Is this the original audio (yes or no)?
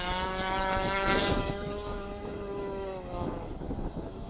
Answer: no